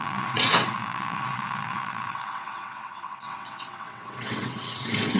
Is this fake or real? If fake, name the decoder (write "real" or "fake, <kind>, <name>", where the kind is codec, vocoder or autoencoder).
fake, vocoder, WaveNeXt